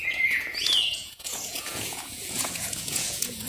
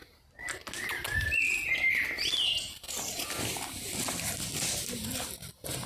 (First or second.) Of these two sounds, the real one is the second